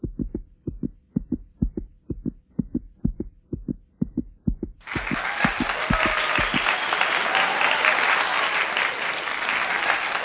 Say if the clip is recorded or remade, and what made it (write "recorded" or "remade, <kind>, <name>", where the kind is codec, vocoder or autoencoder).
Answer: recorded